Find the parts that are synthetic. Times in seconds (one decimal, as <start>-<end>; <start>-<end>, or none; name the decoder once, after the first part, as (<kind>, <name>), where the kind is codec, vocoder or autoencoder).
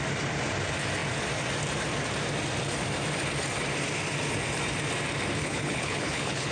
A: 5.4-6.5 (codec, HILCodec)